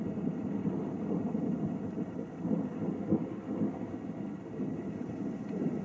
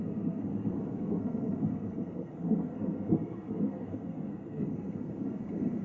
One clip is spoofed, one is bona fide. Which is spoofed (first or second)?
second